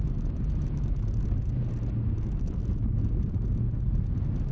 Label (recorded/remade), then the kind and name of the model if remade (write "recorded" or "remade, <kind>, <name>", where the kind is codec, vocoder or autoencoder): recorded